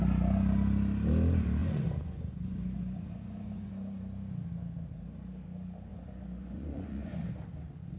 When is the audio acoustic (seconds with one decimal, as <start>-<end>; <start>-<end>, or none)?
0.0-1.6; 3.7-5.9; 7.3-8.0